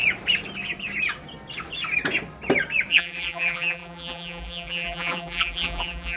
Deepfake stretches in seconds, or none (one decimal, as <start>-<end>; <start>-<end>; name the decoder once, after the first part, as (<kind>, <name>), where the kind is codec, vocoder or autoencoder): 2.9-6.2 (vocoder, BigVGAN v2)